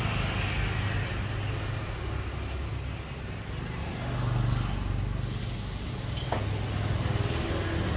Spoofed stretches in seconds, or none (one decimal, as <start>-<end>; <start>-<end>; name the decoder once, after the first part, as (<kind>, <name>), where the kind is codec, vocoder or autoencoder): none